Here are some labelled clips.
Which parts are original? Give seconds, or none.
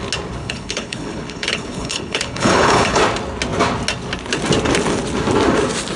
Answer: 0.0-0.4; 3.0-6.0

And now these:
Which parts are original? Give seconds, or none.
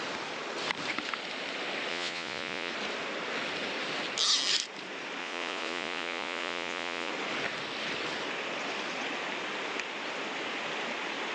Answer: 0.0-1.9; 2.7-5.2; 7.1-11.3